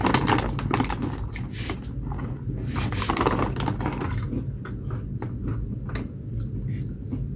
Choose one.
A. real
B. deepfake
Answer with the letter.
A